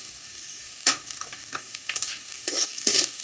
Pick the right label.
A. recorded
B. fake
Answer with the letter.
B